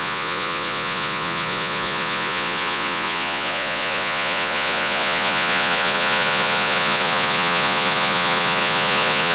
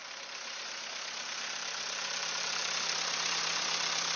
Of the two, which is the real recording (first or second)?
second